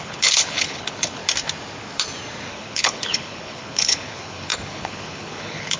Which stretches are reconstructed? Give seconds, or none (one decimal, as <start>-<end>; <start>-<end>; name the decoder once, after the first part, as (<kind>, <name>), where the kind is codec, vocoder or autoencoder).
0.0-1.2 (codec, HILCodec); 2.5-5.8